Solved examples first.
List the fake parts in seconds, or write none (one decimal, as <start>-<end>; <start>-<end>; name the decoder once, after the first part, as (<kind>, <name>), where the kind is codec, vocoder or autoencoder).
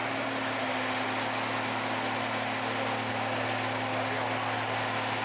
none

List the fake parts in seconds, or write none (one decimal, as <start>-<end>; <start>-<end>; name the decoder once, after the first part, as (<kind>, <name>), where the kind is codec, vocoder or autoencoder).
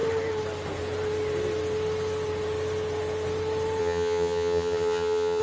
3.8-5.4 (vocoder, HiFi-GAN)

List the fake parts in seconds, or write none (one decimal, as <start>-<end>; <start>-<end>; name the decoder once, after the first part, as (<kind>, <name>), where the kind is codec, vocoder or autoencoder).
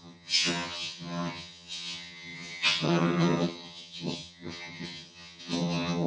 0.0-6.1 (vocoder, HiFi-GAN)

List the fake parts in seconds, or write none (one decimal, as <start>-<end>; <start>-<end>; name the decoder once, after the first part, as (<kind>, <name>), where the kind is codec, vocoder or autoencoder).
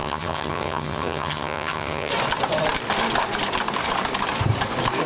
0.0-2.1 (vocoder, HiFi-GAN)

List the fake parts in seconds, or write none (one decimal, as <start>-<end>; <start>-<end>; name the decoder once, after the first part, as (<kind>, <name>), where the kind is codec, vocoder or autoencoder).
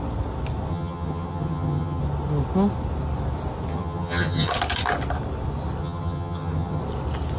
0.7-2.0 (vocoder, HiFi-GAN); 3.7-4.5; 5.8-6.8